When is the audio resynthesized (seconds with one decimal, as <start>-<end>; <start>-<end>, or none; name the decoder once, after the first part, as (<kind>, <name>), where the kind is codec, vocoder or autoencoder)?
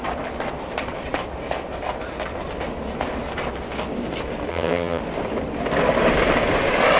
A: 4.5-5.0 (vocoder, HiFi-GAN)